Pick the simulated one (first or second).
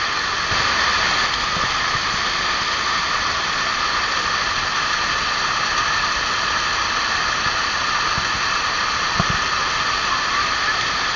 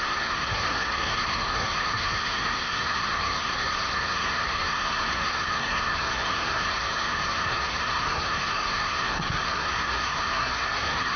second